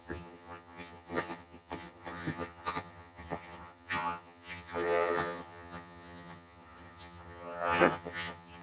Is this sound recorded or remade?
remade